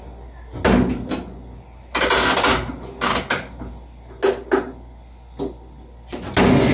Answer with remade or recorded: recorded